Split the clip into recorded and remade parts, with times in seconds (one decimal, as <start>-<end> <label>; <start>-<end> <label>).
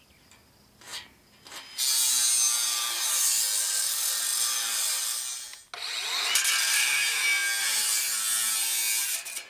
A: 0.0-9.5 recorded